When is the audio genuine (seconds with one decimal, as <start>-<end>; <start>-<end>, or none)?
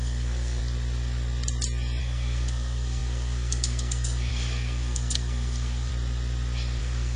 0.6-2.0; 5.9-6.8